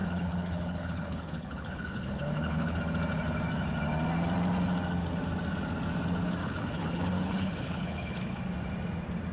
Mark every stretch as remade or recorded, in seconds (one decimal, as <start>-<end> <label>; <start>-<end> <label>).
0.0-2.8 remade; 2.8-6.4 recorded; 6.4-8.4 remade; 8.4-9.3 recorded